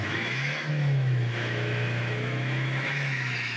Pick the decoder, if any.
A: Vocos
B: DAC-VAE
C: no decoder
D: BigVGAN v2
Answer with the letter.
B